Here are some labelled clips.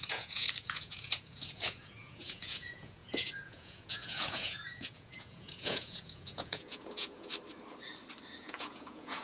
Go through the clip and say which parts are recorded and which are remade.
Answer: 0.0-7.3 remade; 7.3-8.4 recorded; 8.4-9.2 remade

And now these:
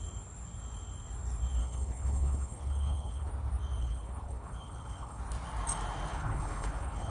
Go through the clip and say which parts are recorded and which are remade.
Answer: 0.0-1.6 recorded; 1.6-3.3 remade; 3.3-3.8 recorded; 3.8-5.2 remade; 5.2-6.1 recorded; 6.1-7.1 remade

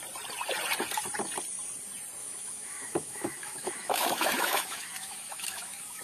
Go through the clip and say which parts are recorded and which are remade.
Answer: 0.0-2.2 recorded; 2.2-6.0 remade

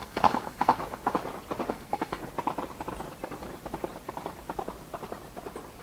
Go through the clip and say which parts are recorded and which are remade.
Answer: 0.0-0.8 remade; 0.8-1.7 recorded; 1.7-2.2 remade; 2.2-5.8 recorded

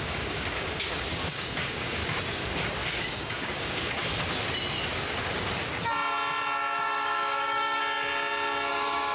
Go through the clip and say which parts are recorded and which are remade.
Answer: 0.0-2.0 remade; 2.0-3.0 recorded; 3.0-4.1 remade; 4.1-6.8 recorded; 6.8-7.8 remade; 7.8-8.7 recorded; 8.7-9.1 remade

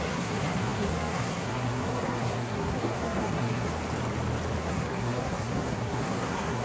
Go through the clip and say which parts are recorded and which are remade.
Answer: 0.0-3.8 remade; 3.8-4.6 recorded; 4.6-6.6 remade

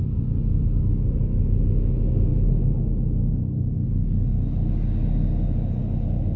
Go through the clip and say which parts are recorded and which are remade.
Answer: 0.0-6.4 recorded

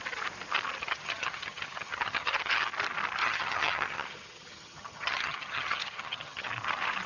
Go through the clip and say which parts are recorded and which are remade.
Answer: 0.0-0.8 recorded; 0.8-2.7 remade; 2.7-3.2 recorded; 3.2-6.5 remade; 6.5-7.1 recorded